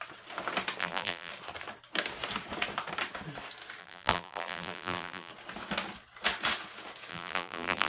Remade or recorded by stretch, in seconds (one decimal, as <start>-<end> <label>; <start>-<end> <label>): 0.0-0.8 recorded; 0.8-1.3 remade; 1.3-3.8 recorded; 3.8-5.3 remade; 5.3-7.1 recorded; 7.1-7.9 remade